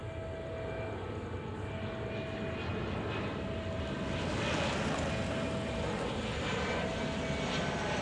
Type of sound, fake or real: real